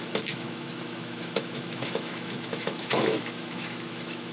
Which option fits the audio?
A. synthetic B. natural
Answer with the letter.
A